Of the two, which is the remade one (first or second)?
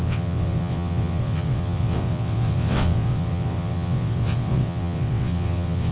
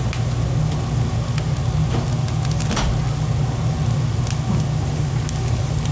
first